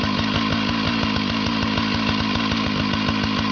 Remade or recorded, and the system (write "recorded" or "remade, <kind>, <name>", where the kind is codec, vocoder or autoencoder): recorded